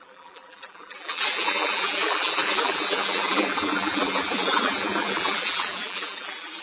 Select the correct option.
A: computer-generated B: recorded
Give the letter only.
A